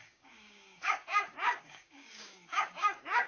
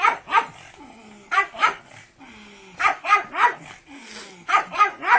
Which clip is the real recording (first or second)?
second